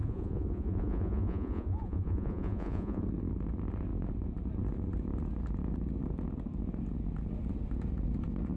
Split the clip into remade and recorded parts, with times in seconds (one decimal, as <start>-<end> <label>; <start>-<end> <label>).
0.0-3.0 remade; 3.0-8.6 recorded